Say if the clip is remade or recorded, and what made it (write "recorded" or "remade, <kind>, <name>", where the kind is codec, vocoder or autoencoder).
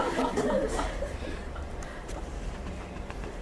remade, vocoder, BigVGAN v2